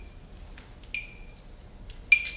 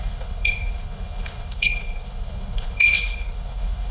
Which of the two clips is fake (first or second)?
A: second